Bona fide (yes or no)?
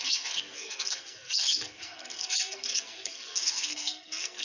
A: no